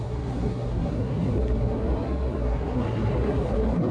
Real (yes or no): no